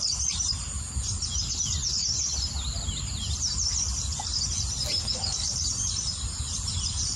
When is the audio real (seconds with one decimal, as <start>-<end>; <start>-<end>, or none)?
0.0-7.2

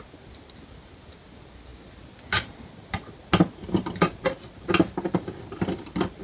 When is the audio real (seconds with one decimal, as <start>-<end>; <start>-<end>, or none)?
0.0-6.2